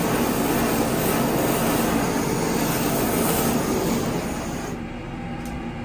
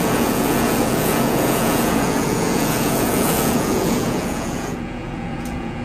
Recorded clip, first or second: first